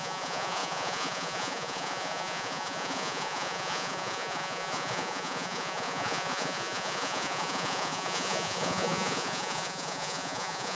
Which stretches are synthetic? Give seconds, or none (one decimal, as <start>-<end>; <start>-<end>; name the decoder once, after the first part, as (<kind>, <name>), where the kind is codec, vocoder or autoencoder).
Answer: 0.0-10.7 (vocoder, Vocos)